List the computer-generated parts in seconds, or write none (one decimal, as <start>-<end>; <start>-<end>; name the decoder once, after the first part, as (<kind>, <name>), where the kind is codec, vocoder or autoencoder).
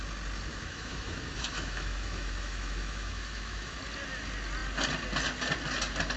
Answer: 0.5-3.8 (autoencoder, DAC-VAE)